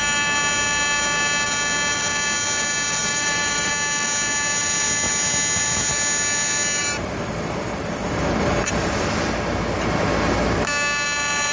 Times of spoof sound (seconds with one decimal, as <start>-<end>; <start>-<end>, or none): 3.0-3.7; 6.8-9.1

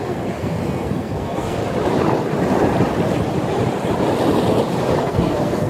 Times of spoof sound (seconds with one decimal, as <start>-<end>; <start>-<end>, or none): 0.0-1.6; 5.0-5.7